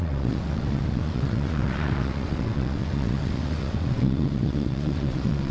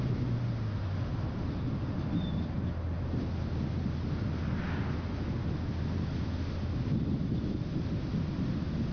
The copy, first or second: first